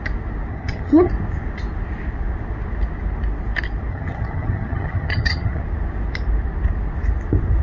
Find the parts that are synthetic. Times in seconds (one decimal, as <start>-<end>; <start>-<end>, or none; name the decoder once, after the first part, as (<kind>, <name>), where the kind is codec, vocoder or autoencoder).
0.5-1.1 (vocoder, HiFi-GAN); 3.9-5.6